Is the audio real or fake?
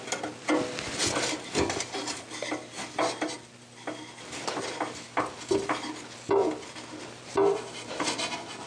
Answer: real